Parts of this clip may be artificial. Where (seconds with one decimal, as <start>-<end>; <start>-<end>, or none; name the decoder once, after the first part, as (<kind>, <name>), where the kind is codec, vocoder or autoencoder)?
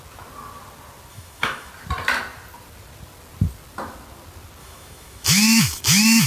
1.1-1.7 (autoencoder, DAC-VAE); 4.6-6.3